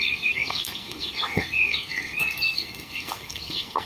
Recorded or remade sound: remade